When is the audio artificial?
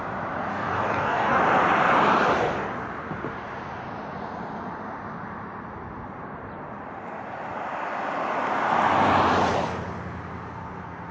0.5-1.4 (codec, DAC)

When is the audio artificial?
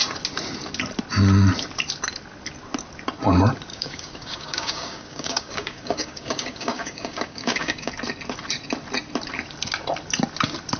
3.7-7.9 (codec, DAC)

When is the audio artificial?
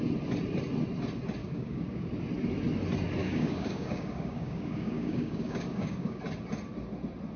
1.4-2.1 (codec, DAC); 3.2-6.2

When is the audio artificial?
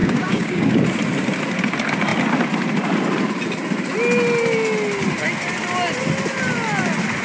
0.0-0.7 (codec, DAC)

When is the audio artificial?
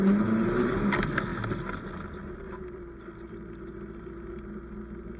none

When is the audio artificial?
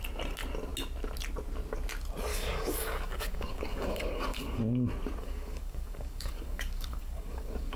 2.3-4.6 (codec, DAC); 5.2-7.8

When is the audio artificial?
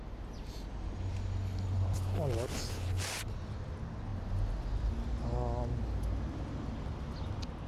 none